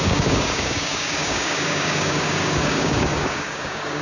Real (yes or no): no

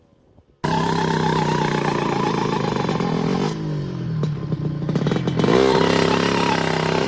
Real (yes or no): yes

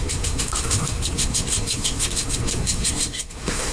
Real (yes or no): no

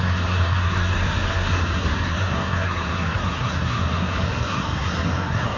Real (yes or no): no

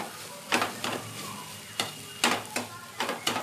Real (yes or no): yes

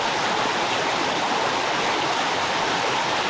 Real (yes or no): yes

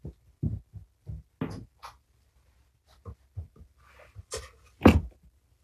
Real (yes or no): yes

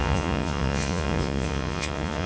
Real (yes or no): no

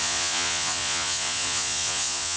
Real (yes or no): no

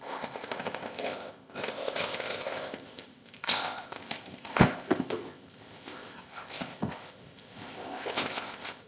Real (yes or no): no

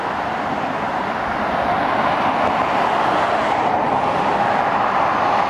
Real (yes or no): yes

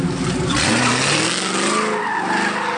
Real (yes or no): yes